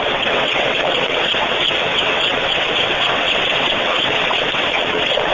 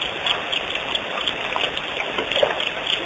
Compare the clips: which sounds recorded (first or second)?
second